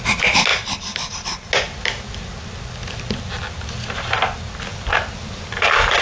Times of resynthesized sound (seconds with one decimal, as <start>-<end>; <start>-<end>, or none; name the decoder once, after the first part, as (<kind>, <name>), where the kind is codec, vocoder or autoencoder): 0.5-1.5 (vocoder, BigVGAN v2); 2.8-3.3; 4.7-6.0